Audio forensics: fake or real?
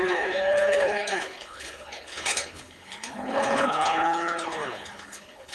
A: fake